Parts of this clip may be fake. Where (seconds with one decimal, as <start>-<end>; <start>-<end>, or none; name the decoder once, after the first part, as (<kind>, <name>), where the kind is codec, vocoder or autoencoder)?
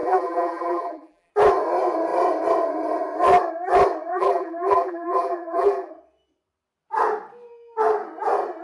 0.0-1.3 (vocoder, BigVGAN v2); 4.1-5.9